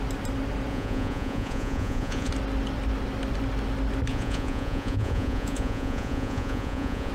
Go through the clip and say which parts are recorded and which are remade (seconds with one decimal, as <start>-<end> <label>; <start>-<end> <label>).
0.0-0.7 recorded; 0.7-2.3 remade; 2.3-4.1 recorded; 4.1-7.1 remade